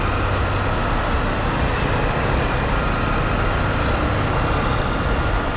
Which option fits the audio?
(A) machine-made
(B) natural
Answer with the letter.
B